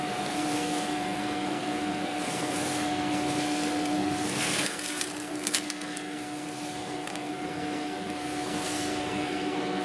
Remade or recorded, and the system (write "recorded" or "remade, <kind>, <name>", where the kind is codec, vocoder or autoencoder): remade, codec, SNAC